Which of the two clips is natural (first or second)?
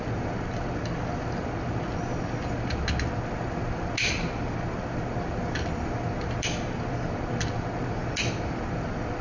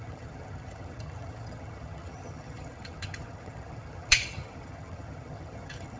first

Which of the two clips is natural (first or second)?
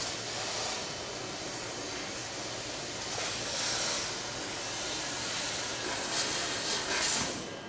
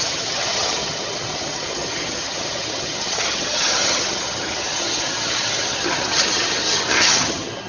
first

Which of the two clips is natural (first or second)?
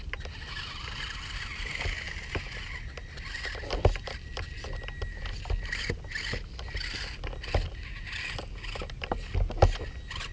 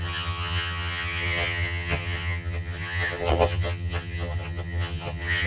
first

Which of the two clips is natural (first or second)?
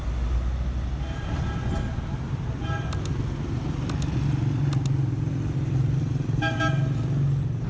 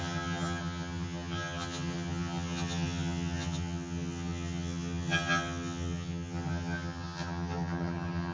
first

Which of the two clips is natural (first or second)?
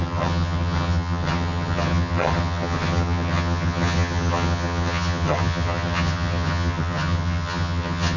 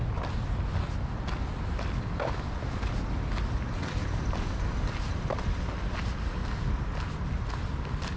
second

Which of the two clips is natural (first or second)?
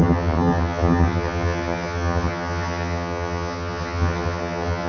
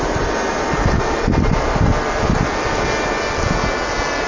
second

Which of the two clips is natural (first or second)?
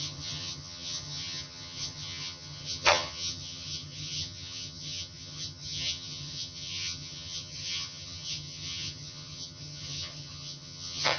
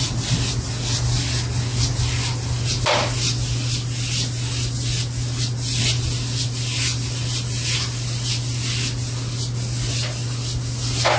second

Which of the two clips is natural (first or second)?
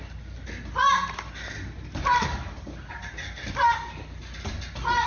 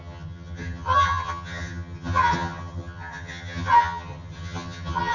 first